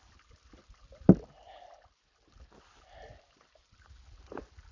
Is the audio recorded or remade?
recorded